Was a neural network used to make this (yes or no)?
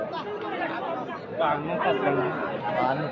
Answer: no